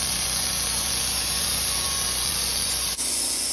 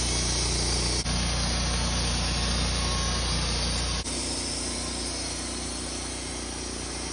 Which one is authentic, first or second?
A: second